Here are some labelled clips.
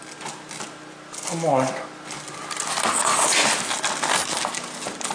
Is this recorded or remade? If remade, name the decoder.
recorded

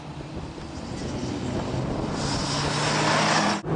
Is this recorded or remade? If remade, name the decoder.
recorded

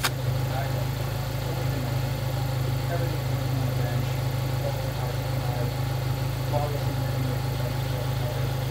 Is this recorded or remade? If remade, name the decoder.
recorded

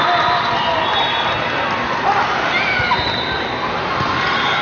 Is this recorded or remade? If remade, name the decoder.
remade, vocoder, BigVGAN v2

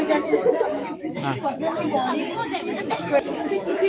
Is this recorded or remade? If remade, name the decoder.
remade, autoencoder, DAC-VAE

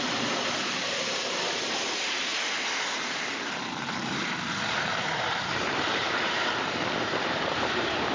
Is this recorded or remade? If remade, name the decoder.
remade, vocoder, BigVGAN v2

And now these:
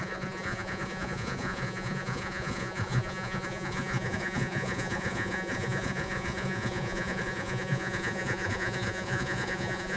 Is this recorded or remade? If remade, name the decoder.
remade, vocoder, Vocos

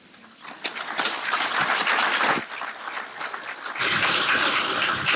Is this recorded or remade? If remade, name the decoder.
recorded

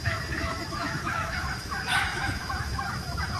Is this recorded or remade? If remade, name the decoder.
remade, autoencoder, DAC-VAE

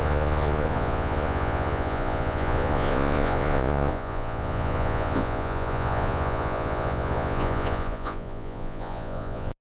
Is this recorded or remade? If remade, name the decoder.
remade, vocoder, Vocos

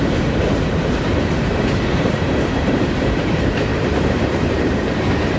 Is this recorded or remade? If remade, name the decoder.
remade, vocoder, BigVGAN v2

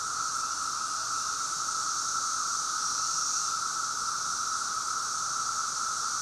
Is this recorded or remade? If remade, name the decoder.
recorded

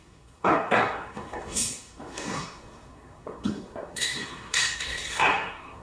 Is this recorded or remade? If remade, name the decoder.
remade, codec, SNAC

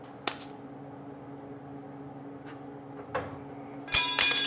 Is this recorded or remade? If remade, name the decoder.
recorded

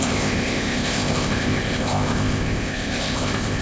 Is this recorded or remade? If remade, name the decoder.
remade, codec, ZipCodec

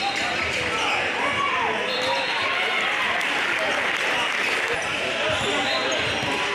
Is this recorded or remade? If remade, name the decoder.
recorded